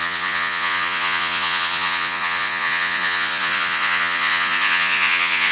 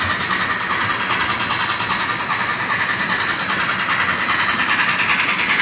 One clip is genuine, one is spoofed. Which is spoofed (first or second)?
first